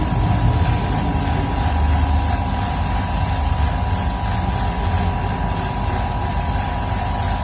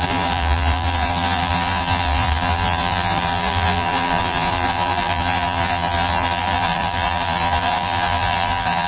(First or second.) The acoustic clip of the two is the first